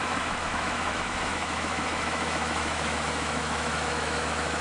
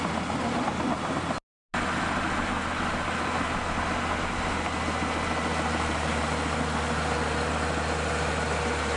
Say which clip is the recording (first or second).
second